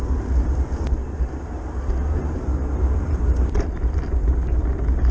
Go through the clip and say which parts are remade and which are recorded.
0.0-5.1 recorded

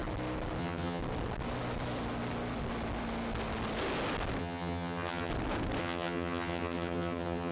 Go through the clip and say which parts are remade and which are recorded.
0.0-0.6 recorded; 0.6-1.0 remade; 1.0-4.4 recorded; 4.4-5.3 remade; 5.3-5.8 recorded; 5.8-7.5 remade

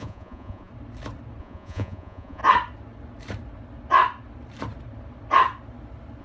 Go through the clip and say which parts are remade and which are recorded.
0.0-0.7 remade; 0.7-1.4 recorded; 1.4-2.4 remade; 2.4-6.2 recorded

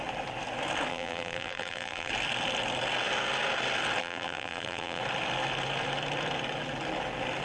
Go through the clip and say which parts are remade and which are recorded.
0.0-0.9 recorded; 0.9-2.1 remade; 2.1-4.0 recorded; 4.0-5.0 remade; 5.0-7.4 recorded

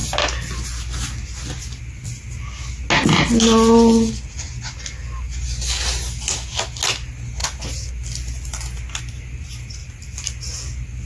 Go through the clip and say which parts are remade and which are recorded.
0.0-9.8 recorded; 9.8-10.4 remade; 10.4-11.1 recorded

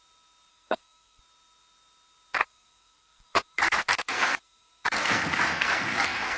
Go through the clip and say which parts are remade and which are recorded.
0.0-0.5 recorded; 0.5-1.2 remade; 1.2-2.4 recorded; 2.4-6.4 remade